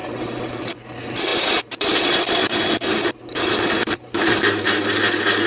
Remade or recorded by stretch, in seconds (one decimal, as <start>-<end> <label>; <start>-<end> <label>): 0.0-5.5 recorded